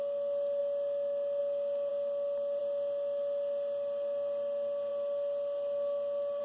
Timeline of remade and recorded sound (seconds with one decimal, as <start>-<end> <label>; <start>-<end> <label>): 0.0-6.4 recorded